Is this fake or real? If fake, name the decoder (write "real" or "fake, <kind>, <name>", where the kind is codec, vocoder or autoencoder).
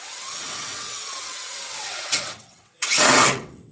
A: fake, vocoder, WaveNeXt